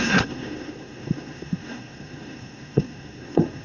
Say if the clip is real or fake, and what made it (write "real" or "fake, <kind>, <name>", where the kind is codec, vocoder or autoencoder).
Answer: fake, codec, SNAC